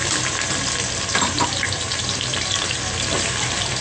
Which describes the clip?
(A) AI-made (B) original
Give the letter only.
A